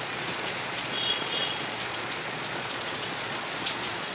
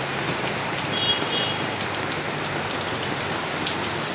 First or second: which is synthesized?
first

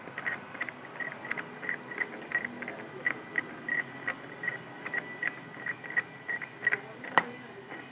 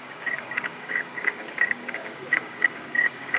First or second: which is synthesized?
second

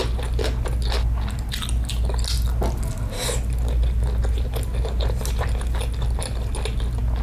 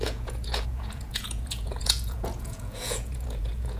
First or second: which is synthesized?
second